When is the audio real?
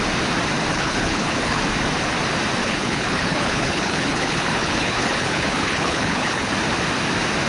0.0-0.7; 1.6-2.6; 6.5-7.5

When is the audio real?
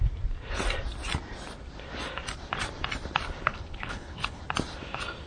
0.0-3.5; 4.4-5.3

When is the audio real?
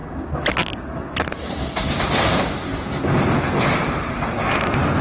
0.0-5.0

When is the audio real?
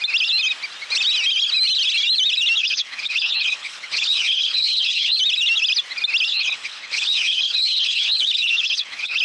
0.0-2.6; 5.2-6.3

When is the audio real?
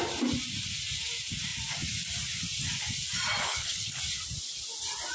0.0-3.4; 4.0-5.1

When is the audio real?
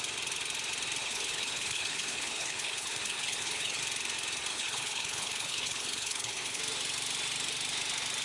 0.0-1.0; 3.8-4.5; 6.6-8.2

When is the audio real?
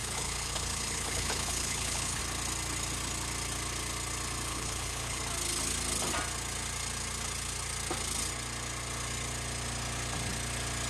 2.2-4.5; 5.2-10.9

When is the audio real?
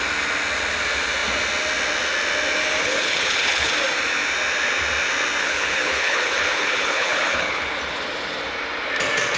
0.0-2.8; 3.7-5.4; 7.7-9.4